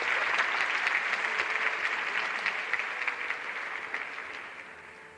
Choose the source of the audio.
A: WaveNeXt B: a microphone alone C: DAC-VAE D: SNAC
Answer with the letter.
B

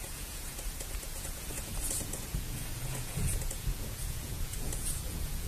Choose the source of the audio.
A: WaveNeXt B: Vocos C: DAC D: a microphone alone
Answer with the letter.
B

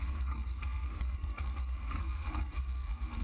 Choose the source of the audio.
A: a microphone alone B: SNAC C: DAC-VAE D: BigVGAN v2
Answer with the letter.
B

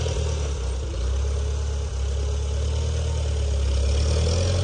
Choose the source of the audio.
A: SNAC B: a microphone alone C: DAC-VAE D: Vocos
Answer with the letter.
B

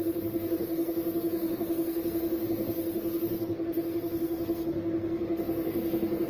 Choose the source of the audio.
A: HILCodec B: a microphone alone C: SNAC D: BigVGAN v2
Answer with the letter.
C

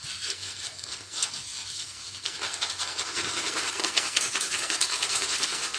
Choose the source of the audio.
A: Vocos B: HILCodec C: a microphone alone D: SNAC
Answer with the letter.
D